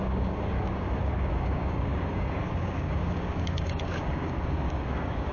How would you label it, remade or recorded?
remade